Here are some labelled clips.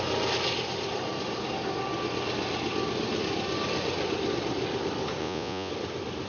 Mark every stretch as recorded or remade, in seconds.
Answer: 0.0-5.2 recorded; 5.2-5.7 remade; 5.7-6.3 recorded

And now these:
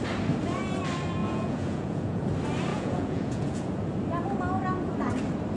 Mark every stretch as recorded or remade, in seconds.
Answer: 0.0-1.2 recorded; 1.2-2.2 remade; 2.2-2.7 recorded; 2.7-3.7 remade; 3.7-5.6 recorded

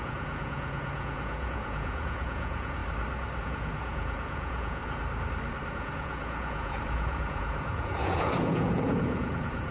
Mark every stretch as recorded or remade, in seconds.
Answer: 0.0-2.8 remade; 2.8-3.4 recorded; 3.4-4.8 remade; 4.8-5.7 recorded; 5.7-9.7 remade

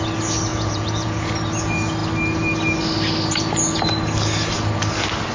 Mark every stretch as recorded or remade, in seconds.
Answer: 0.0-0.5 recorded; 0.5-1.3 remade; 1.3-5.3 recorded